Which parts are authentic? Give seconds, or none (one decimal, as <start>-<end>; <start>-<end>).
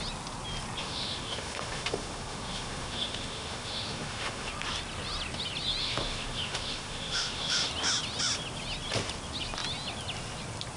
0.0-0.8; 4.5-5.8; 7.7-10.8